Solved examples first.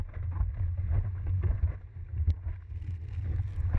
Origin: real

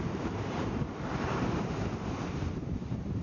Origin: fake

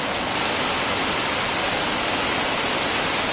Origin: real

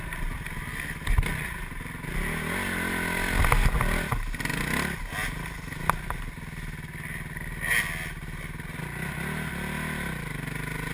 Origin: real